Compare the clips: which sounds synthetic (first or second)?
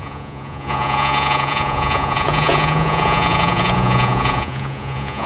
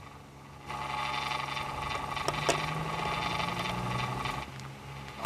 first